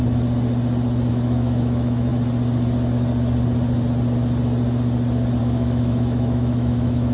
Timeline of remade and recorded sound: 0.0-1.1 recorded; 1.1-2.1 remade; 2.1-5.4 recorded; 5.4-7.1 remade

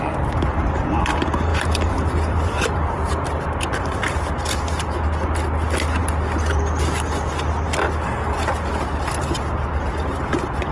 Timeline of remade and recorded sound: 0.0-1.5 recorded; 1.5-4.1 remade; 4.1-10.7 recorded